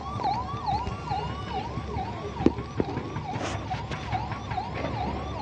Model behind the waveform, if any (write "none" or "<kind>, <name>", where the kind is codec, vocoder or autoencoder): none